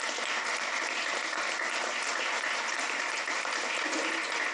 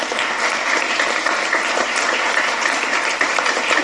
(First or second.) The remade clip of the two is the second